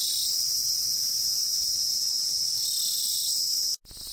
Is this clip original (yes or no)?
yes